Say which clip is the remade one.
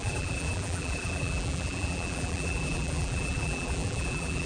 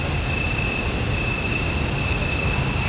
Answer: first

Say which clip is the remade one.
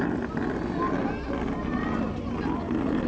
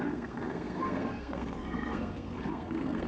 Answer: second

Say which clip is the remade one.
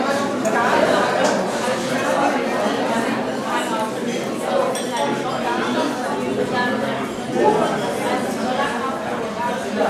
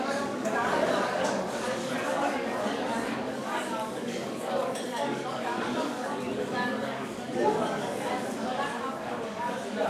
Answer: second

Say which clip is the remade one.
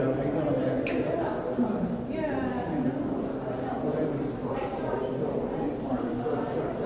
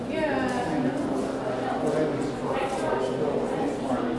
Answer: first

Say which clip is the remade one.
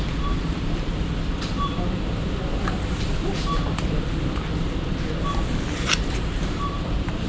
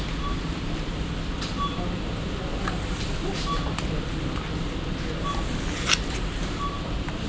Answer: first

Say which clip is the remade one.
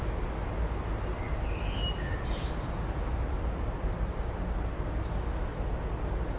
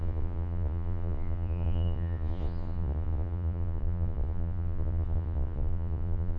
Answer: second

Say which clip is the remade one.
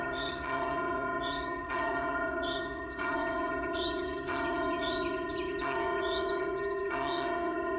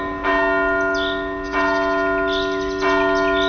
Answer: first